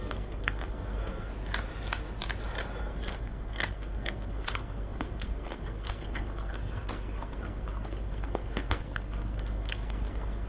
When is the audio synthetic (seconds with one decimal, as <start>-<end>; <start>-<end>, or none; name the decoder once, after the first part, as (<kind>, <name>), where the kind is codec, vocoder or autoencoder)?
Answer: 0.0-1.3 (codec, SNAC); 2.8-10.5